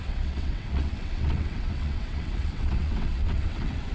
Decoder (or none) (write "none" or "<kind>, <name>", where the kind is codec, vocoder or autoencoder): vocoder, WaveNeXt